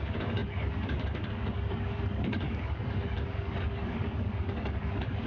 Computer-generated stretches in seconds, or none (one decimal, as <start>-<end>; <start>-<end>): 0.0-5.3